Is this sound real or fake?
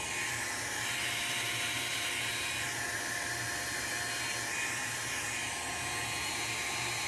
real